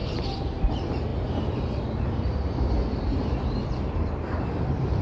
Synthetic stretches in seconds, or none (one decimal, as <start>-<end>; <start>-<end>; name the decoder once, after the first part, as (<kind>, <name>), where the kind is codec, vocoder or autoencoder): 0.0-5.0 (vocoder, BigVGAN v2)